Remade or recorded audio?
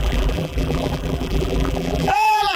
remade